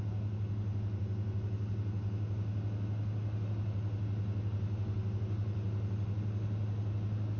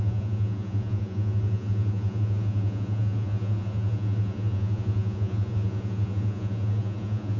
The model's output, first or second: second